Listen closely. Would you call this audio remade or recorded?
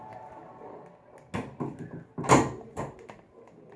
recorded